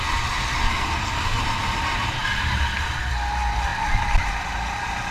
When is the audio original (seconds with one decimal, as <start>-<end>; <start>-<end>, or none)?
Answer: 0.0-0.6; 1.4-5.1